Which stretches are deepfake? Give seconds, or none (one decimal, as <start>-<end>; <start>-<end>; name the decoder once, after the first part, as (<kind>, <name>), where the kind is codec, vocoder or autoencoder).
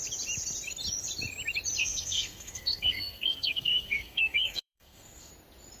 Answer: 1.8-5.3 (codec, SNAC)